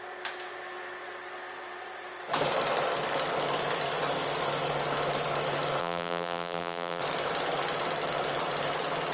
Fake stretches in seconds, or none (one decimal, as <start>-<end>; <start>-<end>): 5.8-7.0